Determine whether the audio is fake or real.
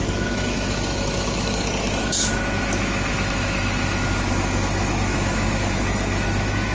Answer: fake